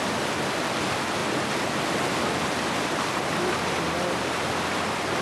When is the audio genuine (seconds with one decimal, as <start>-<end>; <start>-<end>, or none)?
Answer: 0.0-5.2